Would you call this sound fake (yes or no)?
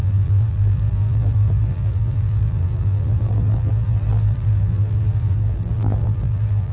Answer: yes